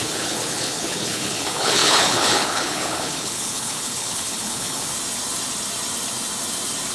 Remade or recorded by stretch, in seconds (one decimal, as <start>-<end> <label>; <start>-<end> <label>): 0.0-4.9 remade; 4.9-6.9 recorded